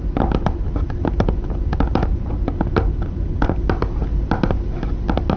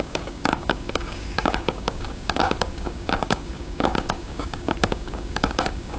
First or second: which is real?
first